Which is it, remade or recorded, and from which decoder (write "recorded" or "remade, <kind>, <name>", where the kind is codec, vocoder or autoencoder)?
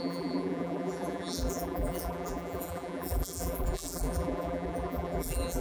remade, vocoder, BigVGAN v2